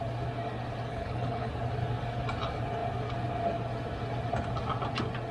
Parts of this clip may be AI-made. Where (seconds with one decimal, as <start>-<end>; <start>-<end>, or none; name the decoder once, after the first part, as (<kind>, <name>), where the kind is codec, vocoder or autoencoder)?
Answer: 0.9-1.5 (codec, HILCodec)

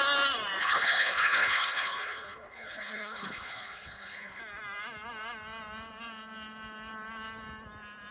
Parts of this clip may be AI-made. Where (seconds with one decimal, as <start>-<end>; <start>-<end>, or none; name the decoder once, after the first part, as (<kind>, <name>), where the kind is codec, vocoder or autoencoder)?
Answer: 0.6-4.4 (codec, HILCodec)

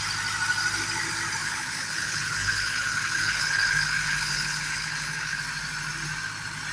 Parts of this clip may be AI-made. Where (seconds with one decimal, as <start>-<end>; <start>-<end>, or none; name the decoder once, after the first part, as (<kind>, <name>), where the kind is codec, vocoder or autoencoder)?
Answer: 1.4-5.4 (codec, HILCodec)

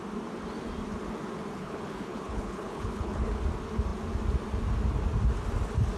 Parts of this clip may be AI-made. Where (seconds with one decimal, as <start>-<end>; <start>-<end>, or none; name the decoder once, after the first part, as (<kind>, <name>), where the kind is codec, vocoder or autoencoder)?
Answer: 1.5-3.4 (codec, HILCodec)

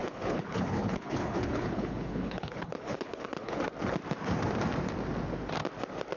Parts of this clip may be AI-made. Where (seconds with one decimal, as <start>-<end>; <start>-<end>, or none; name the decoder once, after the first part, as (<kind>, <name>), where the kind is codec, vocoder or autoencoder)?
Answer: 0.0-3.6 (codec, HILCodec)